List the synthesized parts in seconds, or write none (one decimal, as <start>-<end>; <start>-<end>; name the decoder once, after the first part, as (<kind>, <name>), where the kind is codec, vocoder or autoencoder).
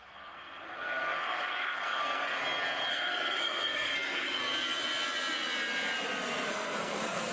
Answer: 0.0-2.4 (codec, SNAC); 2.9-4.4; 6.5-7.3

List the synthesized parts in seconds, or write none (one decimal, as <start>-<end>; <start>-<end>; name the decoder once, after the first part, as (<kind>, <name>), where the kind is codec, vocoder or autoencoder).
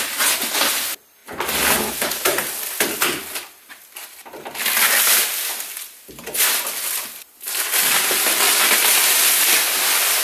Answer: none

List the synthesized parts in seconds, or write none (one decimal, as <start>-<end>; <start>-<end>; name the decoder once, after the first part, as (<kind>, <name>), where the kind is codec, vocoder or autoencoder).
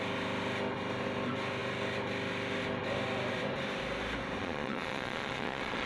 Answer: 4.4-5.9 (vocoder, Vocos)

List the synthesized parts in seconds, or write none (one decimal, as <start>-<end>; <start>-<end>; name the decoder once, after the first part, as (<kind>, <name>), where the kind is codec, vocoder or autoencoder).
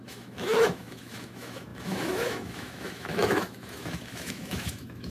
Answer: 0.0-5.1 (autoencoder, DAC-VAE)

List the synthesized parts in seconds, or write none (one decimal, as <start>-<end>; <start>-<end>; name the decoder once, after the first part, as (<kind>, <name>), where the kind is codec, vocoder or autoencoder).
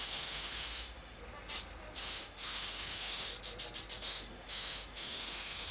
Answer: 0.0-1.2 (autoencoder, DAC-VAE); 2.0-3.3; 4.0-5.7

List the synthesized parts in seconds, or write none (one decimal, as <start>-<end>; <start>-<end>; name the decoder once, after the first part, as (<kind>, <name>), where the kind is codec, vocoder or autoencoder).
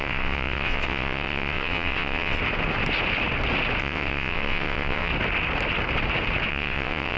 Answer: 0.0-2.4 (vocoder, WaveNeXt); 3.8-5.1; 6.5-7.2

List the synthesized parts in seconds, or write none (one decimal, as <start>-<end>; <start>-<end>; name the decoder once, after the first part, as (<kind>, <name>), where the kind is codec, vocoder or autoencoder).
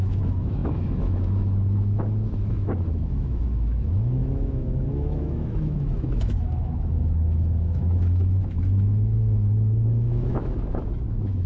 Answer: 0.0-11.5 (autoencoder, DAC-VAE)